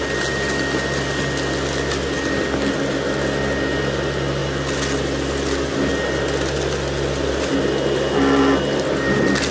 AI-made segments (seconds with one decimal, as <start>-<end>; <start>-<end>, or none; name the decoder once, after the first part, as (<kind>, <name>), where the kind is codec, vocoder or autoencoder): none